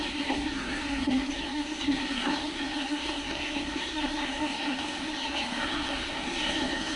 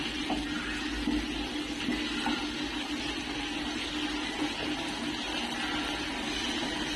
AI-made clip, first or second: first